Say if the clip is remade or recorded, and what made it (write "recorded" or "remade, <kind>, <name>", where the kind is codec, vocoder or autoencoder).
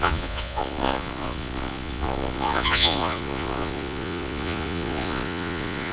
remade, vocoder, Vocos